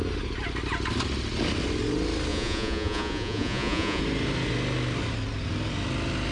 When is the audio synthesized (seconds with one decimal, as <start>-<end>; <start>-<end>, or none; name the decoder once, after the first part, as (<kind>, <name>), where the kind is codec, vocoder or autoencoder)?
2.3-4.0 (vocoder, Vocos)